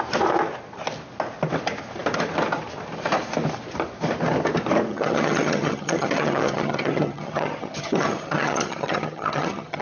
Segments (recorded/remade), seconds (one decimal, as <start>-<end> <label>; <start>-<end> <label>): 0.0-4.9 recorded; 4.9-9.8 remade